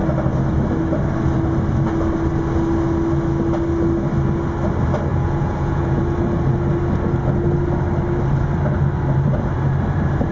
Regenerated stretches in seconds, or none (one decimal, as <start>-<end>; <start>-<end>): 5.1-6.0